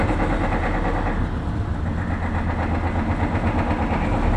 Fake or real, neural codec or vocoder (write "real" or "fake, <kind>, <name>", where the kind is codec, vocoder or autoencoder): real